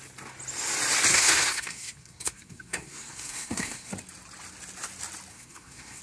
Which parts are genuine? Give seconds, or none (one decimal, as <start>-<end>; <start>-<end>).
0.0-1.1; 3.9-5.3